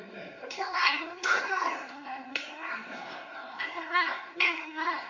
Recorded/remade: remade